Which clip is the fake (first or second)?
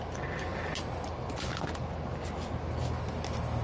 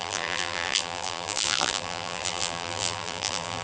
second